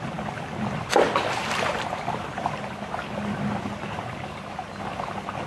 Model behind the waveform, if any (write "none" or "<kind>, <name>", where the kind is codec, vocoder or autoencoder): vocoder, BigVGAN v2